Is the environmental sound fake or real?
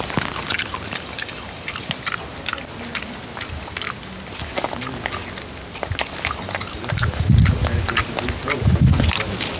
real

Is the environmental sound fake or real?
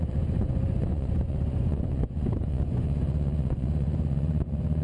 fake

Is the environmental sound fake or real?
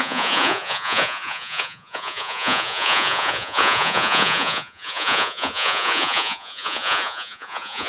fake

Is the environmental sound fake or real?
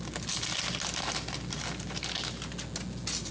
real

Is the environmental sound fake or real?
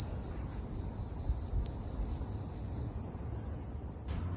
real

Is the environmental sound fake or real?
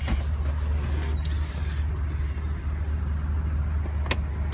real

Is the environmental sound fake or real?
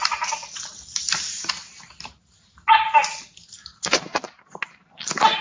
real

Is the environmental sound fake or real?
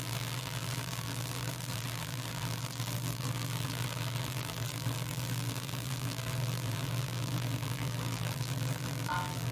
fake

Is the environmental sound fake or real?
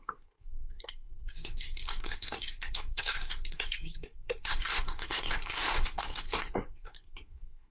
fake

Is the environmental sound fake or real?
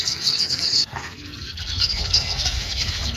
fake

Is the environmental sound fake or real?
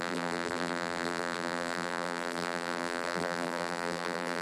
fake